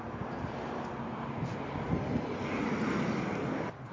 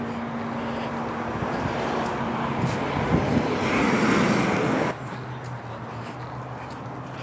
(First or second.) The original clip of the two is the second